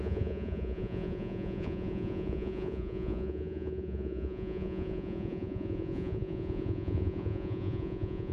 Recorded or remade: remade